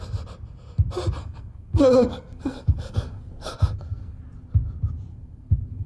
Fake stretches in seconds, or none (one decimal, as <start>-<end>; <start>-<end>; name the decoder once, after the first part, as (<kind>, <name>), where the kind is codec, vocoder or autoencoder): 1.2-4.2 (codec, SNAC); 5.1-5.9